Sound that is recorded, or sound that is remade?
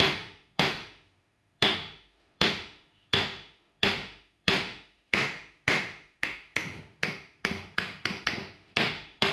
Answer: remade